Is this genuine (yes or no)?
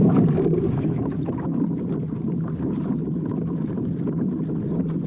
yes